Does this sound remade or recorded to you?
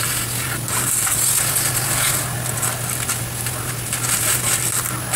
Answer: recorded